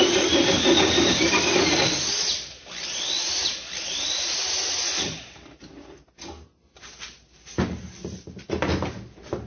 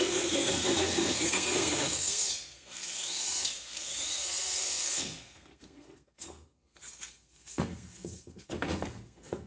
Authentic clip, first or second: first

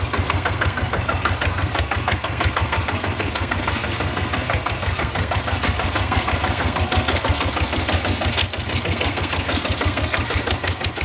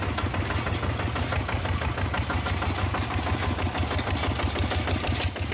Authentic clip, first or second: second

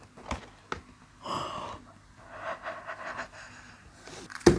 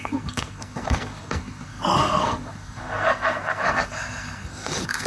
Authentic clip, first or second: first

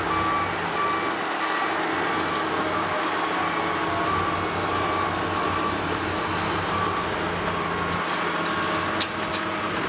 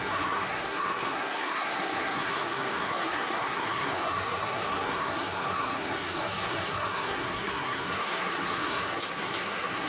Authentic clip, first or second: first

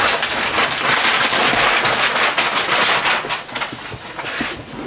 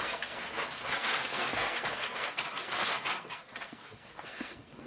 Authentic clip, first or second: first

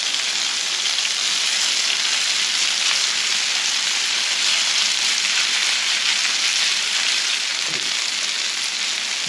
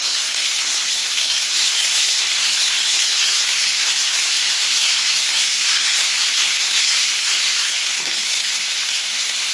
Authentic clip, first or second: first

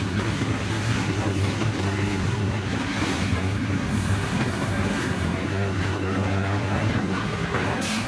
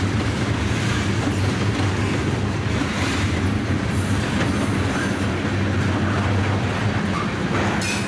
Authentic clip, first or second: second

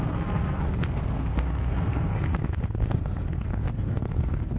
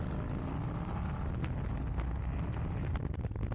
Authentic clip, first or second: second